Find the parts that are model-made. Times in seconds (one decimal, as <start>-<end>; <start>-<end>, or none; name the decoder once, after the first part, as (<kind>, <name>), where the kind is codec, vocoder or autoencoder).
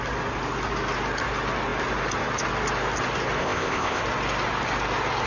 3.4-4.0 (codec, ZipCodec)